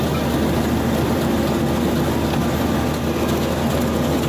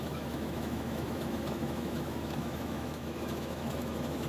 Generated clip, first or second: second